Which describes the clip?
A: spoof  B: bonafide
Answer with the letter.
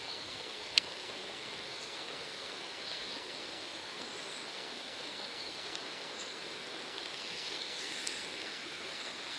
A